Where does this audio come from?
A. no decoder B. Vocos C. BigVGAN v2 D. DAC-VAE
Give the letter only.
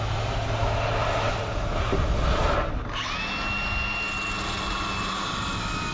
A